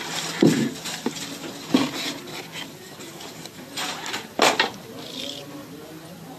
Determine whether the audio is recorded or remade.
recorded